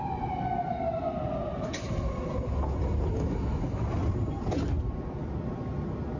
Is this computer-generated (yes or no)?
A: no